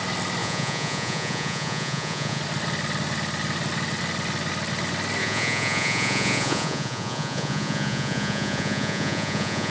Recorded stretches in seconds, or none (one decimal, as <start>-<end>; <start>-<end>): 0.0-0.4; 2.4-5.2

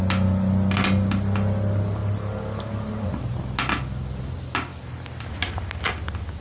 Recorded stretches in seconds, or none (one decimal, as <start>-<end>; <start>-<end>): 0.0-6.4

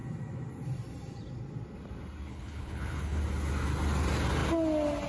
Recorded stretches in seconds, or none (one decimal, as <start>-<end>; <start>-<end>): 0.0-2.3; 3.2-5.1

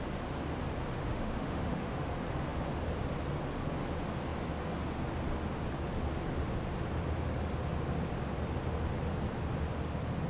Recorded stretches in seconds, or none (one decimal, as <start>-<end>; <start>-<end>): 0.0-1.0; 2.1-10.3

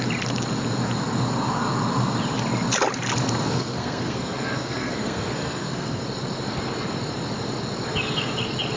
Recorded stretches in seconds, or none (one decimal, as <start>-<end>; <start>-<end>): 0.0-3.5; 6.0-8.8

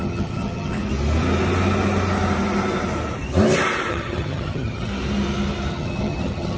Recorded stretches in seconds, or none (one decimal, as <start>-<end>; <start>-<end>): 0.8-3.9; 4.9-5.7

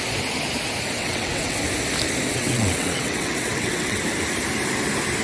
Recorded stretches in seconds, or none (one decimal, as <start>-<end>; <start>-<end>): 0.0-1.0; 1.6-2.3; 4.0-5.2